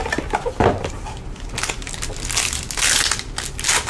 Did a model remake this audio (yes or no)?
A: no